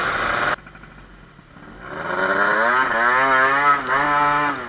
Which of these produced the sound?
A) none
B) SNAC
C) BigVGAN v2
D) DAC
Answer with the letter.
A